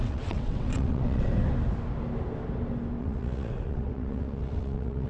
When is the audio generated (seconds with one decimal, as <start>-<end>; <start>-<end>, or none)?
0.0-1.3; 3.0-5.1